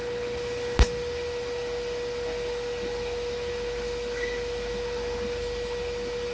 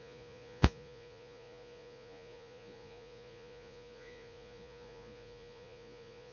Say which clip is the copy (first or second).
second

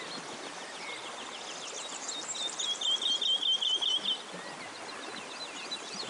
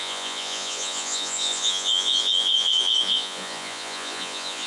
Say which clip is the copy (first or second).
second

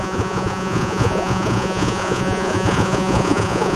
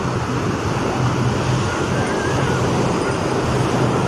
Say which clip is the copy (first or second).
first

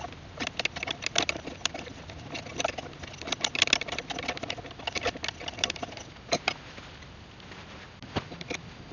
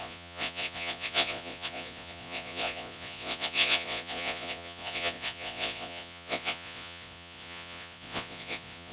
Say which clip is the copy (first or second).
second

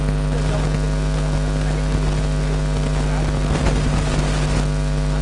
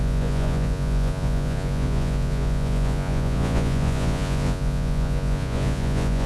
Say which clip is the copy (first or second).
second